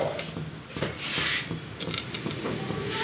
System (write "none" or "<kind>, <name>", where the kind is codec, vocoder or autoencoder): none